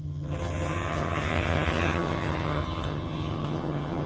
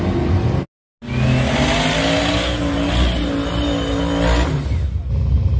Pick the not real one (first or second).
first